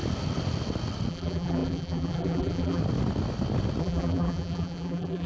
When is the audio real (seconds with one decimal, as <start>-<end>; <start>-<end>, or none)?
0.0-1.1; 2.8-3.8